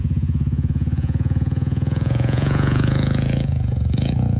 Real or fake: fake